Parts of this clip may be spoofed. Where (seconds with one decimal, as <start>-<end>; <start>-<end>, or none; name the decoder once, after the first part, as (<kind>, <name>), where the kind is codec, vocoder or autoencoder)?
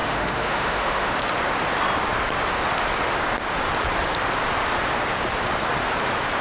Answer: 0.0-1.3 (autoencoder, DAC-VAE)